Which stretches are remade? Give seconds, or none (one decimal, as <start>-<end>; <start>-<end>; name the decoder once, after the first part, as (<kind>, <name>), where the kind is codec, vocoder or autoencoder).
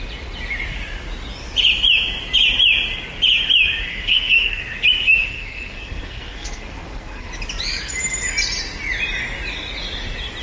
3.9-4.6 (codec, SNAC); 5.2-7.3